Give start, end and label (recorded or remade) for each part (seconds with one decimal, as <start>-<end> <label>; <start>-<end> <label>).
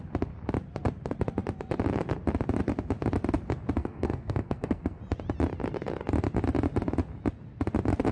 0.0-3.8 recorded; 3.8-5.0 remade; 5.0-8.1 recorded